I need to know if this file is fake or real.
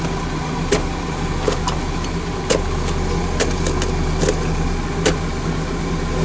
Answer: real